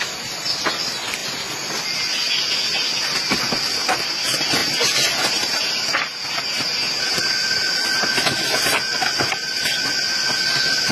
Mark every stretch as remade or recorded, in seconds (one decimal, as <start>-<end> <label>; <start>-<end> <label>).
0.0-4.6 recorded; 4.6-7.3 remade; 7.3-10.9 recorded